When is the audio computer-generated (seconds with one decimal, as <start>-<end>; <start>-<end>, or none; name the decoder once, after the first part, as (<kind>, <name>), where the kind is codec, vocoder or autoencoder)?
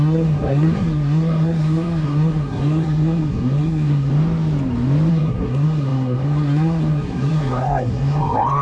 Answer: 0.0-4.1 (codec, SNAC); 5.1-8.6